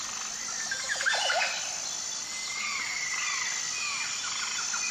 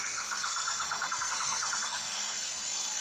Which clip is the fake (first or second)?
second